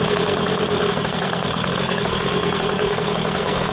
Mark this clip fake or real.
fake